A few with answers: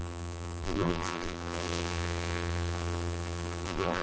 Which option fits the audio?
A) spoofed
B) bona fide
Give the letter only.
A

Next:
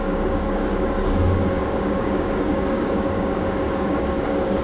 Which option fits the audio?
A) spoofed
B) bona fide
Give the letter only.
A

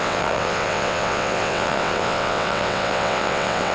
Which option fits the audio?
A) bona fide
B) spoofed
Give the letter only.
B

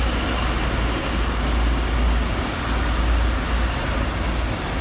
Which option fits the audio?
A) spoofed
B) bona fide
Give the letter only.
B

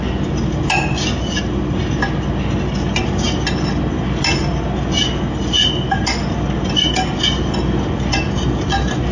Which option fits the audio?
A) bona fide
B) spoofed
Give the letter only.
A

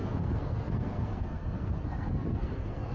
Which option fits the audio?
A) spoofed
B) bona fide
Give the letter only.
A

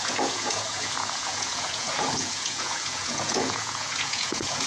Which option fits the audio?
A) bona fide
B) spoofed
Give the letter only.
B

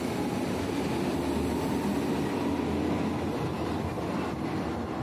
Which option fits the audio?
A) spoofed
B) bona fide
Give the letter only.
B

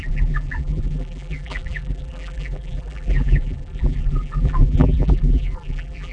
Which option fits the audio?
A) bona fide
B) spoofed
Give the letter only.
B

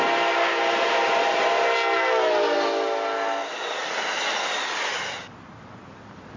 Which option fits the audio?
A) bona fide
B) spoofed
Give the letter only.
A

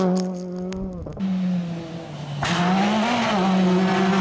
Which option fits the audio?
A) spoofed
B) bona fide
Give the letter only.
B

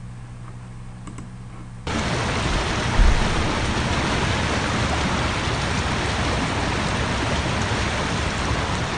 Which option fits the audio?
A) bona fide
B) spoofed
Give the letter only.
A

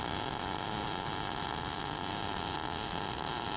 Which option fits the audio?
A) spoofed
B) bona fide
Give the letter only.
B